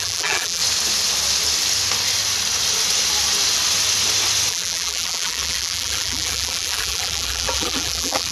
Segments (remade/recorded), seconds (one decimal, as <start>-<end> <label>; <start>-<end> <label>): 0.0-0.6 remade; 0.6-4.5 recorded; 4.5-8.3 remade